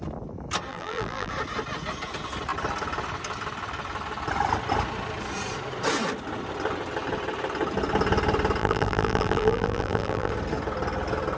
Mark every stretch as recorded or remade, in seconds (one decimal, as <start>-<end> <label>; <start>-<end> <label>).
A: 0.0-0.7 recorded; 0.7-1.3 remade; 1.3-8.6 recorded; 8.6-10.3 remade; 10.3-11.4 recorded